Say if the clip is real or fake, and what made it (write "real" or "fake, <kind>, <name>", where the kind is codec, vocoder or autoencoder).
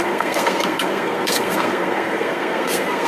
fake, codec, SNAC